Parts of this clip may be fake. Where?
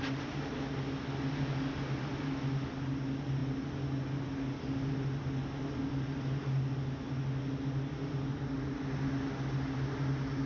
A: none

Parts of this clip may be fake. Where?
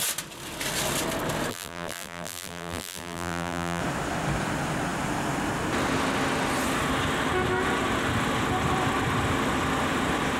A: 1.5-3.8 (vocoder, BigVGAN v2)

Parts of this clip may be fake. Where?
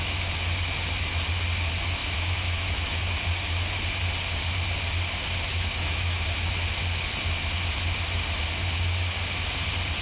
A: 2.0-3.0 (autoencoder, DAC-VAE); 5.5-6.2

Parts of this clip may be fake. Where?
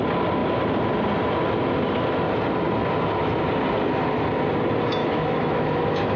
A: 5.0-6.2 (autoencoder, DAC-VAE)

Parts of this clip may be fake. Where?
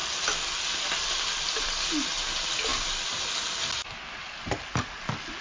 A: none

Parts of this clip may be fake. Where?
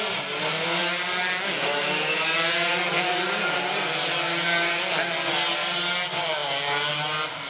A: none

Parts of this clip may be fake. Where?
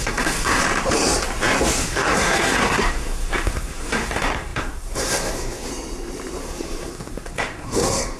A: 0.0-0.6 (codec, SNAC); 1.8-5.7; 6.4-8.2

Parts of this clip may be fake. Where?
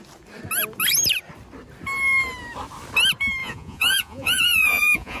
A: 3.4-5.2 (vocoder, Vocos)